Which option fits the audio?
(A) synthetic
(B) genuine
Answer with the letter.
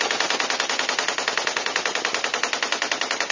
B